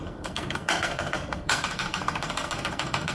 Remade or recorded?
remade